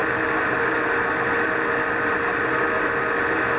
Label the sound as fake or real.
real